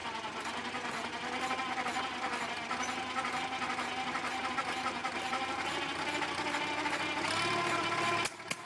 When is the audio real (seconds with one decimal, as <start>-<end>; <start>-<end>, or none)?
0.0-5.0; 5.6-8.7